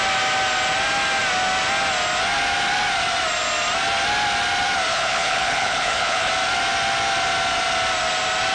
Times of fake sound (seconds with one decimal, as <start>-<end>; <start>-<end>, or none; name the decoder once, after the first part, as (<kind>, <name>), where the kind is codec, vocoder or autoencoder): 4.9-6.3 (codec, HILCodec)